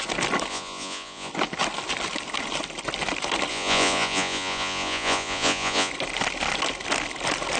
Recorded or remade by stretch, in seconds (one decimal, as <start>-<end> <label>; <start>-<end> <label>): 0.0-0.5 recorded; 0.5-1.3 remade; 1.3-3.5 recorded; 3.5-5.9 remade; 5.9-7.6 recorded